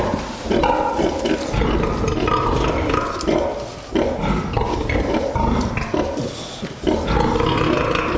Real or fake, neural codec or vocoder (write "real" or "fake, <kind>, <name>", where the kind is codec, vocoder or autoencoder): real